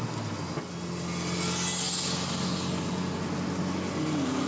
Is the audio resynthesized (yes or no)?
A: no